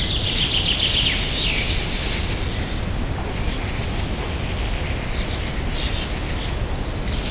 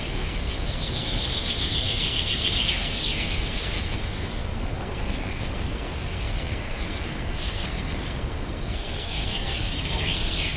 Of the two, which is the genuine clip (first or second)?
first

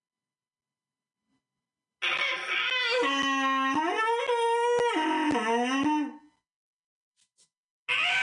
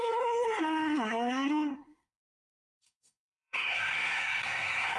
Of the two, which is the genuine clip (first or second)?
first